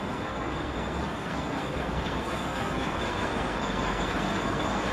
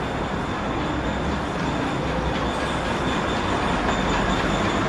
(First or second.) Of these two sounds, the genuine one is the second